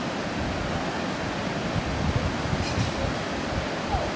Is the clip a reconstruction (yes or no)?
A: no